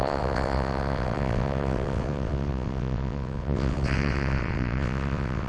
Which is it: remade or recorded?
remade